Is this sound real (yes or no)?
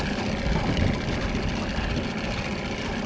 yes